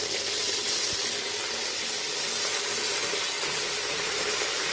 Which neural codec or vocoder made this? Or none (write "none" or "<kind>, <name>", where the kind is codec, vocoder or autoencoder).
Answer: none